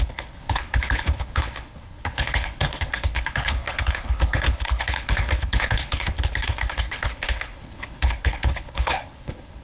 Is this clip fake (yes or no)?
yes